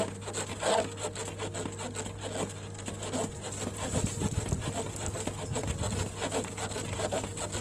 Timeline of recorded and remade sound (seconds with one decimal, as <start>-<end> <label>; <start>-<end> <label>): 0.0-7.6 recorded